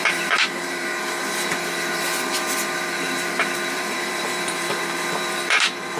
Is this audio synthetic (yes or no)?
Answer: yes